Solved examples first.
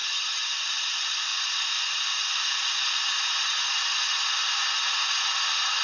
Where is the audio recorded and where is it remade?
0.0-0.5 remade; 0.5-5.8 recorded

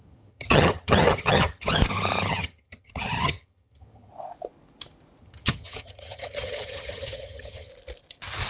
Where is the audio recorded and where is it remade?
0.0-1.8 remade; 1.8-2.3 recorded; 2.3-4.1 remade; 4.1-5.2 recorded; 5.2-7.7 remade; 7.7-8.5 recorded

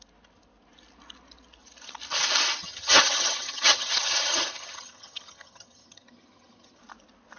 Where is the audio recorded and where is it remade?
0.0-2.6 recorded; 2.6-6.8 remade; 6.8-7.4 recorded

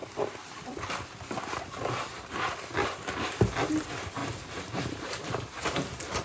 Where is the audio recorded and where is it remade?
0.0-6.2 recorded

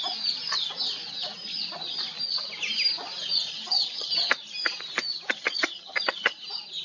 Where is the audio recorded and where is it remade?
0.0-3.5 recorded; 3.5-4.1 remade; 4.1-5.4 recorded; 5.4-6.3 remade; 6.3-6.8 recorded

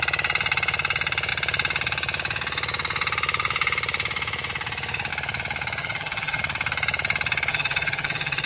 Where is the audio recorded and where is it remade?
0.0-5.8 recorded; 5.8-6.4 remade; 6.4-7.5 recorded; 7.5-8.5 remade